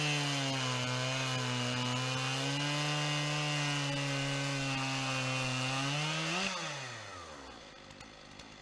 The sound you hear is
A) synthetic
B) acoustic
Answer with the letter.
B